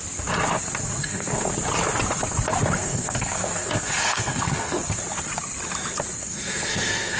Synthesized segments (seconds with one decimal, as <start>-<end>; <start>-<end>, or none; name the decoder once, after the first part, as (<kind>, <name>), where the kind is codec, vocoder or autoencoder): 1.0-1.5 (codec, SNAC); 2.8-5.0; 6.2-7.2